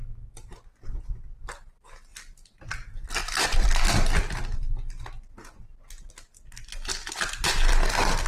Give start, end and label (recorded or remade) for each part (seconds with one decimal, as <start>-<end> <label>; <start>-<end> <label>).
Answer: 0.0-2.1 recorded; 2.1-3.8 remade; 3.8-8.3 recorded